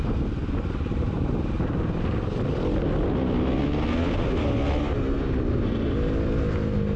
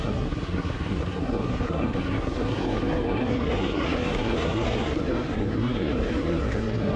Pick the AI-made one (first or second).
second